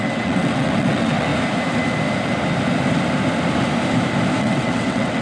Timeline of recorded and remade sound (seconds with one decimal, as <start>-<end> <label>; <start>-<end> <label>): 0.0-1.3 remade; 1.3-4.4 recorded; 4.4-5.2 remade

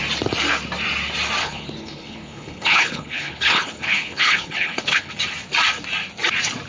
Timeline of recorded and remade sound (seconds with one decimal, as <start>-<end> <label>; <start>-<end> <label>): 0.0-1.4 recorded; 1.4-5.1 remade; 5.1-6.7 recorded

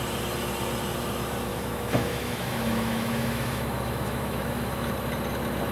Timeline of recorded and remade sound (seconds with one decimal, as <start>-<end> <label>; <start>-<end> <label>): 0.0-1.5 recorded; 1.5-4.9 remade; 4.9-5.7 recorded